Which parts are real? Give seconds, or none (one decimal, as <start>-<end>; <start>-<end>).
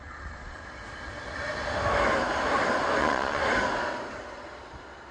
0.6-3.0; 3.4-5.1